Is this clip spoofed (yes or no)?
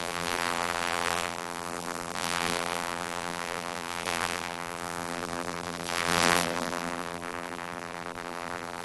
yes